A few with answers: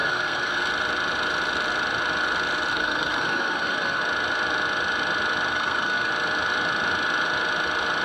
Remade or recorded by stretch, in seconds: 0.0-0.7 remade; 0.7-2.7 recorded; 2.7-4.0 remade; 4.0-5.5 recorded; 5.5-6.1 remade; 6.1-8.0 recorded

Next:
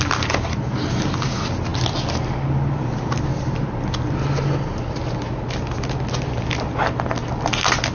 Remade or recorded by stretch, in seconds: 0.0-7.9 recorded

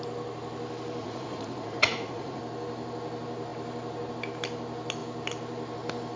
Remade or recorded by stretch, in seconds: 0.0-1.0 recorded; 1.0-2.4 remade; 2.4-6.2 recorded

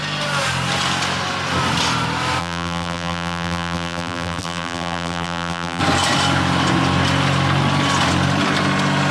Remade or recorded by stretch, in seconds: 0.0-2.4 recorded; 2.4-5.8 remade; 5.8-9.1 recorded

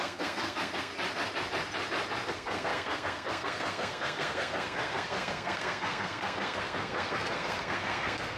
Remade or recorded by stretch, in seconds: 0.0-0.9 remade; 0.9-2.3 recorded; 2.3-8.4 remade

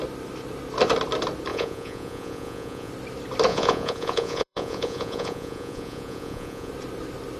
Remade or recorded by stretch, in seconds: 0.0-1.5 recorded; 1.5-2.9 remade; 2.9-3.5 recorded; 3.5-6.7 remade; 6.7-7.4 recorded

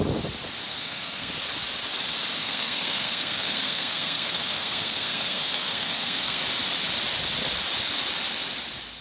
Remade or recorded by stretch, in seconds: 0.0-0.7 recorded; 0.7-1.3 remade; 1.3-2.4 recorded; 2.4-6.4 remade; 6.4-9.0 recorded

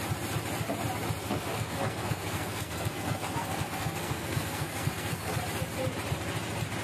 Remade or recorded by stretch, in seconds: 0.0-1.2 recorded; 1.2-5.3 remade; 5.3-6.8 recorded